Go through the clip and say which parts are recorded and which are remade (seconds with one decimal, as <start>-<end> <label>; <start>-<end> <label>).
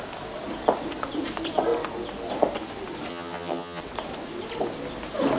0.0-3.1 recorded; 3.1-3.8 remade; 3.8-5.4 recorded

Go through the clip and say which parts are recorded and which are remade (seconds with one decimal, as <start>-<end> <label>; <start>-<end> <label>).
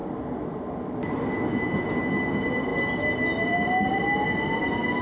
0.0-5.0 recorded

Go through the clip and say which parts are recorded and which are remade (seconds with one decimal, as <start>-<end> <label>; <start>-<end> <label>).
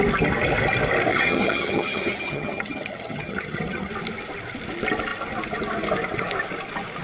0.0-1.1 recorded; 1.1-3.9 remade; 3.9-7.0 recorded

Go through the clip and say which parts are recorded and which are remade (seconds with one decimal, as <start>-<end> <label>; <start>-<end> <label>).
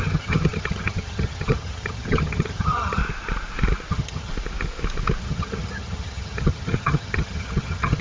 0.0-3.0 remade; 3.0-3.9 recorded; 3.9-4.3 remade; 4.3-5.2 recorded; 5.2-8.0 remade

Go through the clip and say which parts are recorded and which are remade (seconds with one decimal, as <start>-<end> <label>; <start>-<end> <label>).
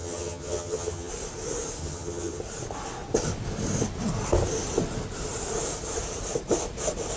0.0-1.1 remade; 1.1-1.8 recorded; 1.8-2.4 remade; 2.4-7.2 recorded